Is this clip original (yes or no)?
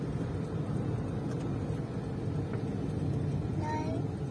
yes